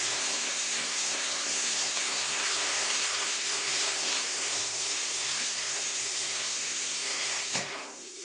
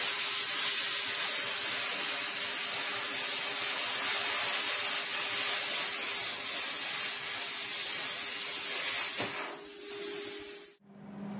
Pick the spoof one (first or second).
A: first